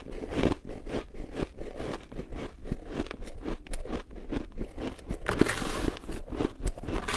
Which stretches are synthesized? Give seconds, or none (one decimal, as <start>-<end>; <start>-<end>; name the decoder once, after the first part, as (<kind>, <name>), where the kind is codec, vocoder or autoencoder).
none